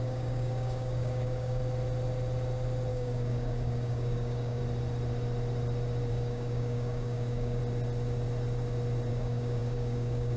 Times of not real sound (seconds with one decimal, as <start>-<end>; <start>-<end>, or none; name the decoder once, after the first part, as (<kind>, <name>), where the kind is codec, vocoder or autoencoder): 0.0-1.6 (codec, DAC); 2.9-4.6; 6.1-7.6; 9.1-10.4